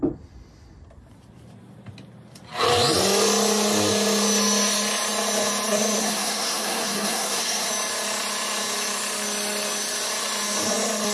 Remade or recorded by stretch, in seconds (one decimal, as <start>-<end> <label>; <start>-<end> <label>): 0.0-6.0 recorded; 6.0-7.7 remade; 7.7-11.1 recorded